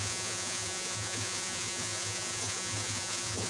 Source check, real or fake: fake